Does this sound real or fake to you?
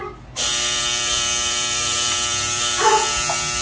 fake